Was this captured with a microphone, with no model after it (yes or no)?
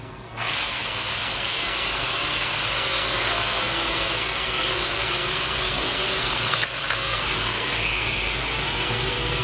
no